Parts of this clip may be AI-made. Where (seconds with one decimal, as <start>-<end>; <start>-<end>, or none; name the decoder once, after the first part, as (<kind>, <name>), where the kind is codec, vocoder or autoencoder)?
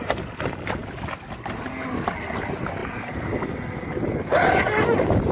none